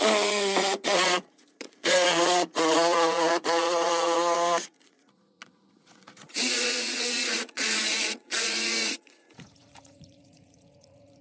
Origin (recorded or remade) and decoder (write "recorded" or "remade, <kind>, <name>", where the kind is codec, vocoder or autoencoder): remade, vocoder, Vocos